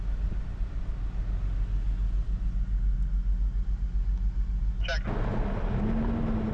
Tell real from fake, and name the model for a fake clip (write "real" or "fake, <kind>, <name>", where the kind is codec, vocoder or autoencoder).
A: real